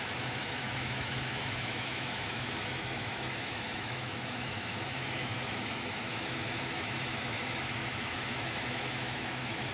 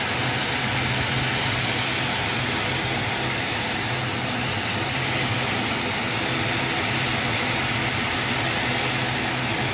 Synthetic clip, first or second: first